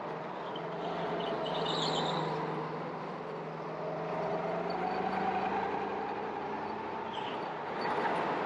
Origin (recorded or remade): recorded